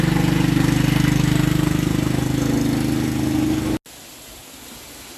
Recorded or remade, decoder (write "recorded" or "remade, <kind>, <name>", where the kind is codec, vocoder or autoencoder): recorded